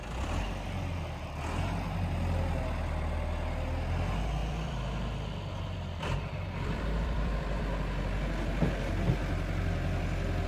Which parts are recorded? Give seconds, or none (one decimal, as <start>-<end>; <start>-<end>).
0.0-4.4; 7.6-10.5